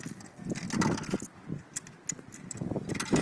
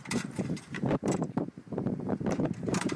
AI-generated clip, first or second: second